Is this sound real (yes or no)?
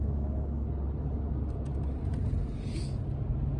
yes